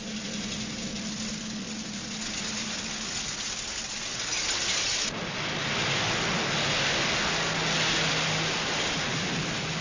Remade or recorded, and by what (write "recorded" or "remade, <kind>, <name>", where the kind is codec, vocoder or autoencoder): recorded